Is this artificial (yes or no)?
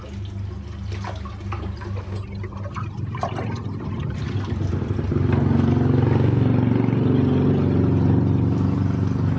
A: no